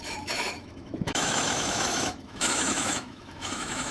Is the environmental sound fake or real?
fake